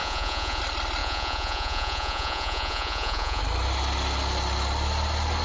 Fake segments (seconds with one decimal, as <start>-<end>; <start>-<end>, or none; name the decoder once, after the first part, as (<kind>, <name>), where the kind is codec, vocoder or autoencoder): 0.0-0.6 (vocoder, Vocos); 1.0-3.4